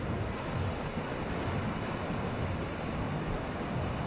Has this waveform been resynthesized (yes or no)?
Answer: no